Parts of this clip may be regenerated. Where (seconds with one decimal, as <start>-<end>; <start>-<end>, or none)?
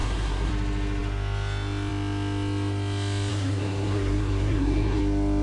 0.0-0.5; 3.3-5.0